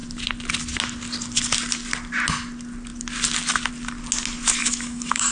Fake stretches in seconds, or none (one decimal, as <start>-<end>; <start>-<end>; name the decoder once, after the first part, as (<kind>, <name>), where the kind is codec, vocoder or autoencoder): 4.6-5.3 (codec, DAC)